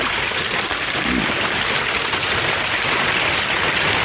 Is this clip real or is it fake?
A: real